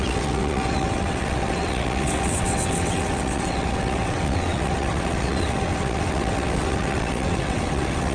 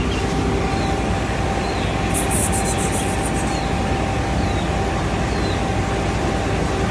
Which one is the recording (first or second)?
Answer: second